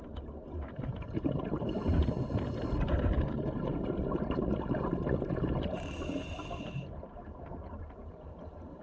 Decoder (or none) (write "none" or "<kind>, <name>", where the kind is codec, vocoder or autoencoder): none